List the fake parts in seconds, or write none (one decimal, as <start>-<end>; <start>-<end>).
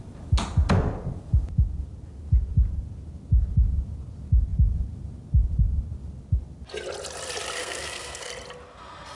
7.6-8.3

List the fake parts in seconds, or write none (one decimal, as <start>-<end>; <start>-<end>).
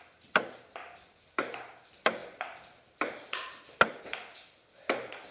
none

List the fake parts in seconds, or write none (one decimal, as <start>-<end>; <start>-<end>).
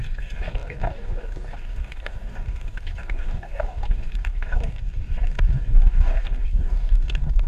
0.0-7.5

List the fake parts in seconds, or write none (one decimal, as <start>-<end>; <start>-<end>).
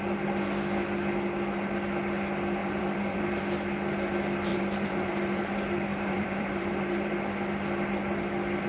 2.6-3.4; 4.5-5.4; 5.9-7.1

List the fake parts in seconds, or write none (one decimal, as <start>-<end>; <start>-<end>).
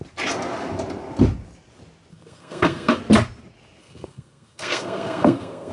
2.1-3.0; 3.8-5.7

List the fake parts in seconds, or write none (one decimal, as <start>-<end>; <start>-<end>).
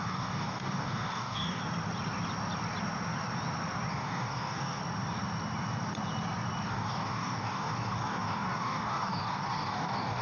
0.0-1.6; 3.9-4.8; 6.7-10.2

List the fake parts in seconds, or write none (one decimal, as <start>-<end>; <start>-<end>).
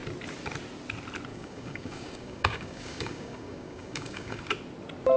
1.3-4.4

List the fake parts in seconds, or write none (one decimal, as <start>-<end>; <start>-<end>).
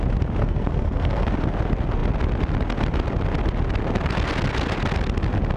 0.4-1.3